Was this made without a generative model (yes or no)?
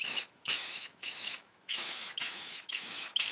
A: no